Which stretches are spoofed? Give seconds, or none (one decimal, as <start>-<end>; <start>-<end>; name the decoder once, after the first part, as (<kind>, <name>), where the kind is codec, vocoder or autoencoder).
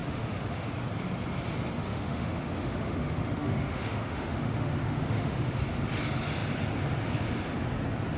0.0-0.7 (autoencoder, DAC-VAE); 1.9-5.6